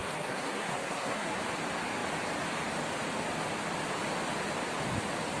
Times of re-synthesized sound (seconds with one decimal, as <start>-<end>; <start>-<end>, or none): 0.0-1.4